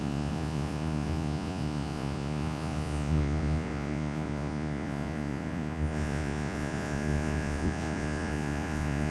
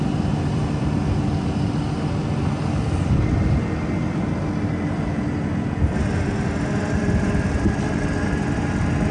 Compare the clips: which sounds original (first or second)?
second